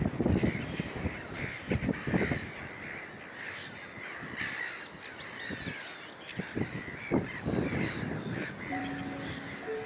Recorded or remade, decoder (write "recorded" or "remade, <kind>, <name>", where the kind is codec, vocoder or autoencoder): recorded